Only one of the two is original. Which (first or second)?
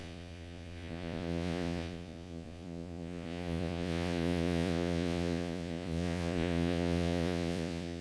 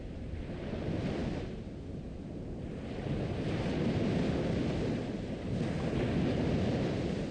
second